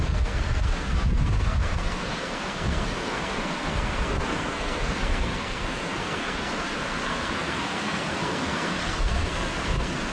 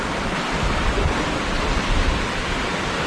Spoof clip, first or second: first